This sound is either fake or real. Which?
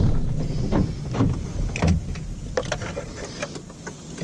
real